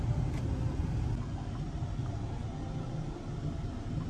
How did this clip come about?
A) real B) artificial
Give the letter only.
A